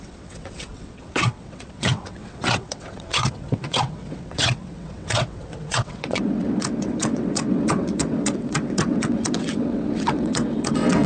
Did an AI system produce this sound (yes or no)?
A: yes